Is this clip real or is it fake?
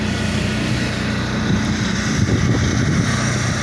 real